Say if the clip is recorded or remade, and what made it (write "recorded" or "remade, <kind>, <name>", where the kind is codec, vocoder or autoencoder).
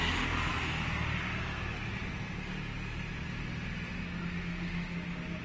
recorded